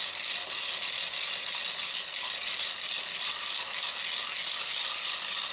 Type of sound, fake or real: real